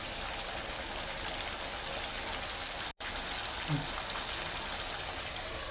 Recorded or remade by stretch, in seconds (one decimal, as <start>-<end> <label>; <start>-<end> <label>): 0.0-5.7 recorded